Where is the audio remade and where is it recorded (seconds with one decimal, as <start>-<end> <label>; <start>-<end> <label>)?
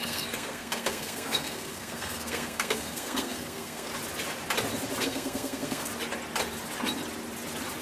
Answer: 0.0-3.9 remade; 3.9-5.0 recorded; 5.0-5.9 remade; 5.9-7.8 recorded